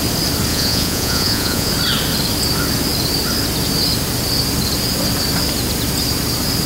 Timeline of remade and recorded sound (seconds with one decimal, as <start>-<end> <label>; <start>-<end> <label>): 0.0-0.5 recorded; 0.5-1.7 remade; 1.7-6.7 recorded